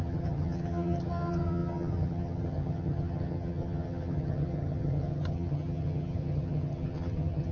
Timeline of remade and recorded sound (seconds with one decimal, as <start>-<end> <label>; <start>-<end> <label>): 0.0-7.5 remade